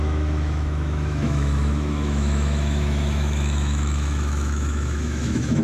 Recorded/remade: remade